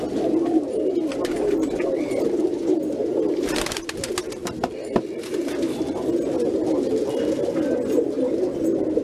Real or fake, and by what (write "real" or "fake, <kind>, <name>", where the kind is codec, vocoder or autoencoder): real